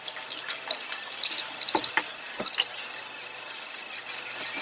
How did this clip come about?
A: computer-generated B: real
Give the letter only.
B